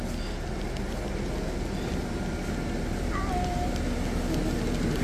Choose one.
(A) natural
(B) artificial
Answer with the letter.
A